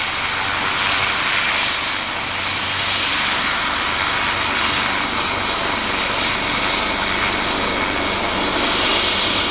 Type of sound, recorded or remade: recorded